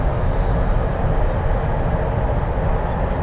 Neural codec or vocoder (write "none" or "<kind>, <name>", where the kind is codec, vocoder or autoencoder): none